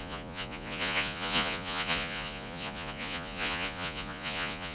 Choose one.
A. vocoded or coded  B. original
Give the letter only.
A